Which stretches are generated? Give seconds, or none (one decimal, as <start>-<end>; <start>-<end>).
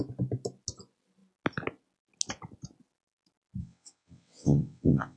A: 3.6-5.2